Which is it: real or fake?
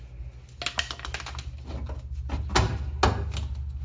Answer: real